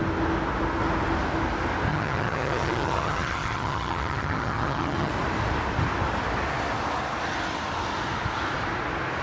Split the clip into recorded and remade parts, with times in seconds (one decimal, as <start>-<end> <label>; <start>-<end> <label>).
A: 0.0-1.9 recorded; 1.9-5.1 remade; 5.1-9.2 recorded